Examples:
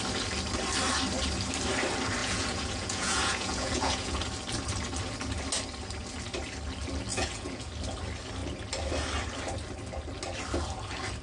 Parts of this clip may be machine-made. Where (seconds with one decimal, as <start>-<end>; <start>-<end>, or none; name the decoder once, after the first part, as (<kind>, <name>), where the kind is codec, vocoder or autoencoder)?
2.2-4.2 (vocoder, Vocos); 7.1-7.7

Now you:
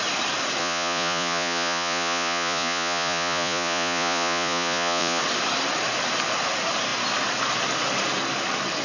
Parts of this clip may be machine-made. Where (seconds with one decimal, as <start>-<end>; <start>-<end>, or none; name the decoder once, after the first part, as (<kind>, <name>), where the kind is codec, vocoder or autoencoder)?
0.6-5.2 (vocoder, Vocos)

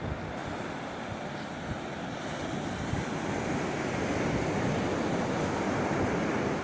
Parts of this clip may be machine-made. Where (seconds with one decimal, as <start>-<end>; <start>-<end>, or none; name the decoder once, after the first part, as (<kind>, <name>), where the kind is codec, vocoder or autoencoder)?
none

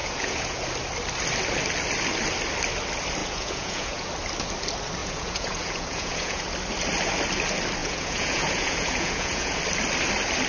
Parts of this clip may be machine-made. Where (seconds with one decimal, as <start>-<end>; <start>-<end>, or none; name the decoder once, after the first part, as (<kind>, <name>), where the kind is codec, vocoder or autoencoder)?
0.0-0.6 (vocoder, Vocos); 3.2-4.1; 5.0-6.4; 7.8-9.6

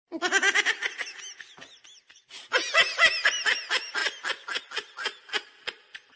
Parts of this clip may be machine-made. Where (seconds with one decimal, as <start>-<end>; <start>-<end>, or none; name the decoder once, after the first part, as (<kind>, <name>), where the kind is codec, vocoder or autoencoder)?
none